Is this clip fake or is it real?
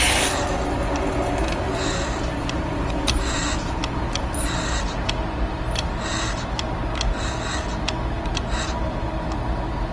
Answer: real